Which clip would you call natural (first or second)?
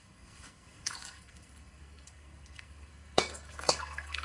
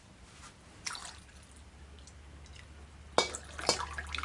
second